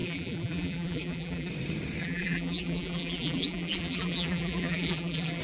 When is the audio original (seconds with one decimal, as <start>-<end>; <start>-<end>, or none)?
1.5-2.0